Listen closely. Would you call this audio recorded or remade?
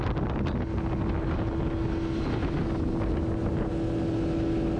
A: recorded